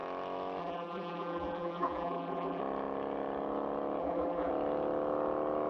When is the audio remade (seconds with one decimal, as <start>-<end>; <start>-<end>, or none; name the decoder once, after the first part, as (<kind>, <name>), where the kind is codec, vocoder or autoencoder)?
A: 0.6-2.6 (vocoder, BigVGAN v2); 4.0-4.5